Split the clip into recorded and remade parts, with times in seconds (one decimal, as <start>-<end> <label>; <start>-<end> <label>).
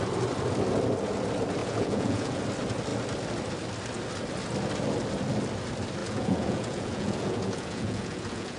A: 0.0-1.6 recorded; 1.6-2.4 remade; 2.4-6.0 recorded; 6.0-8.6 remade